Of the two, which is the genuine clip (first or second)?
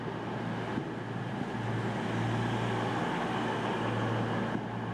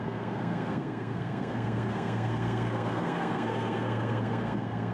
first